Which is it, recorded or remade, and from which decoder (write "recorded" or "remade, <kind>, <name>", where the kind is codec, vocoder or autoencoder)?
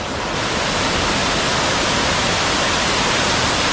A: recorded